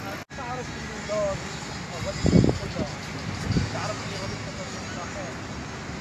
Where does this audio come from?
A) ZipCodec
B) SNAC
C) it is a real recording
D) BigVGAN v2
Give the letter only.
C